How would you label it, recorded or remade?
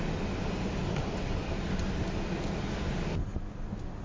recorded